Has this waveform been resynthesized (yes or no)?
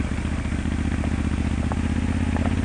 no